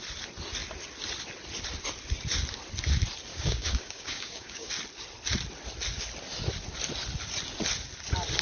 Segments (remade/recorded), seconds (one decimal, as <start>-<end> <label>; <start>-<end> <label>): 0.0-3.3 recorded; 3.3-4.7 remade; 4.7-8.4 recorded